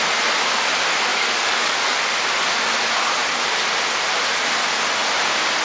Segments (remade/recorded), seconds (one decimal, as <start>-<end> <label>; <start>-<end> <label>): 0.0-1.1 recorded; 1.1-2.0 remade; 2.0-5.6 recorded